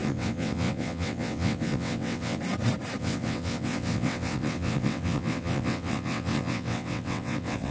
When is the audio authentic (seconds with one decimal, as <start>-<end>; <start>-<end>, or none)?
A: 2.4-3.0